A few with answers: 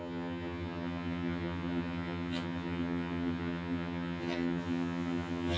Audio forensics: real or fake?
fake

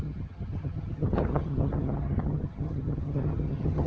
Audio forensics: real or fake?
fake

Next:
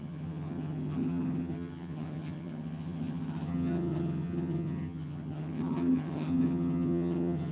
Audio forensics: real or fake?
fake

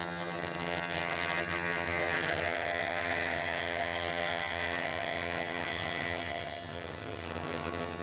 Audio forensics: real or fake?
fake